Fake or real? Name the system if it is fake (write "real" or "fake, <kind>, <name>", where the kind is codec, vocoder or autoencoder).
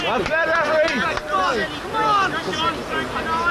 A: real